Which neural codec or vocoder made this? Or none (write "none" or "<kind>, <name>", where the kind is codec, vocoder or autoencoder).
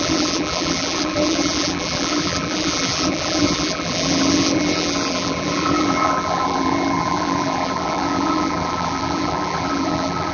vocoder, BigVGAN v2